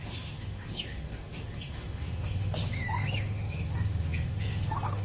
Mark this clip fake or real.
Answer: fake